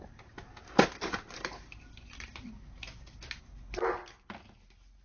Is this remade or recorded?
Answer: recorded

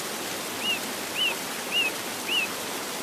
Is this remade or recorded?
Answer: recorded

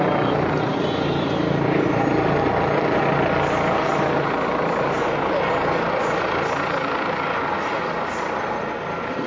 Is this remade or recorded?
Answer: recorded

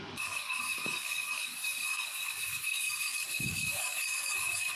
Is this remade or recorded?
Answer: remade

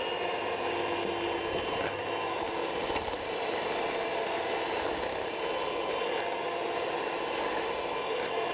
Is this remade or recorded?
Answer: recorded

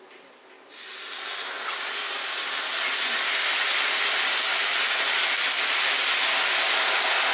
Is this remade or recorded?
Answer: recorded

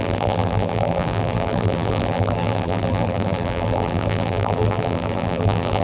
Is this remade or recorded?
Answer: remade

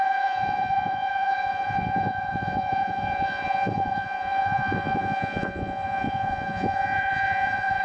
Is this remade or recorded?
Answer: remade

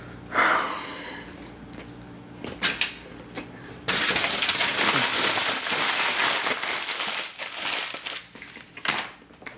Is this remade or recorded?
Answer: recorded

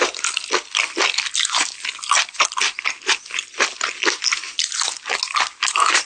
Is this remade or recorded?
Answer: recorded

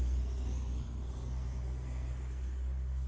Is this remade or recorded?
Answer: remade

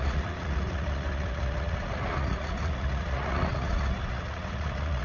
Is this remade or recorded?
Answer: remade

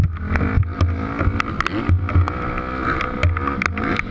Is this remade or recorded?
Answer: recorded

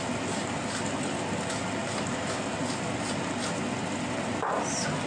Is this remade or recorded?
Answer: recorded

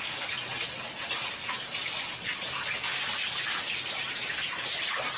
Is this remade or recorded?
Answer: recorded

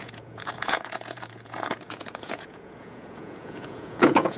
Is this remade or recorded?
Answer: remade